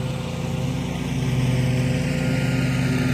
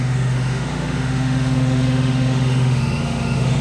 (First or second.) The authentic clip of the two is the first